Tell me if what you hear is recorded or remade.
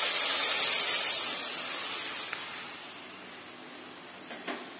recorded